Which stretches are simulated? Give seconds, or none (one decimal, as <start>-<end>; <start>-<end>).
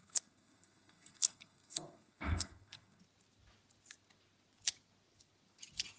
0.0-3.0